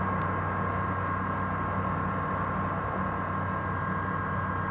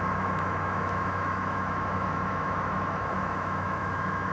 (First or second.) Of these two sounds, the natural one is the first